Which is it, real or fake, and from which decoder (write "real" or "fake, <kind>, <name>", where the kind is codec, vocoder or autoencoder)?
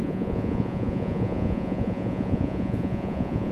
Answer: fake, vocoder, Vocos